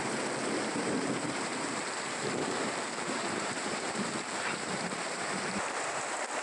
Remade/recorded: remade